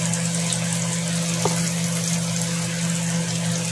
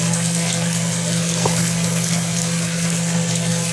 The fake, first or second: second